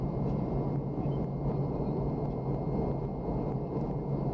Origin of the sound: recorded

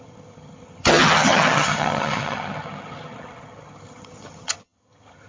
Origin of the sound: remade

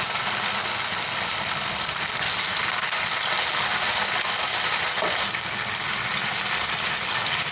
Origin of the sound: recorded